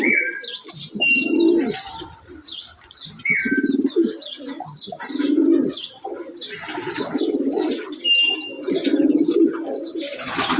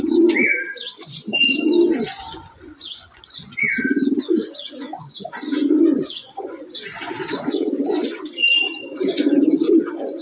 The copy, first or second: second